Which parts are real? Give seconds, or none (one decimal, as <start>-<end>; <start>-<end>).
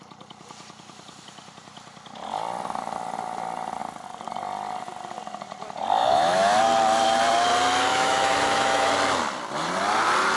0.0-6.0; 6.6-7.9; 8.9-10.4